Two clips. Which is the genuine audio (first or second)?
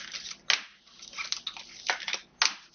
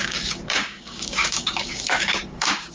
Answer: first